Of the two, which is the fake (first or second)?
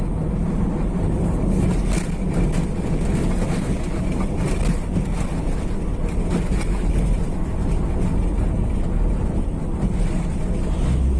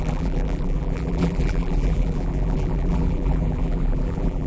second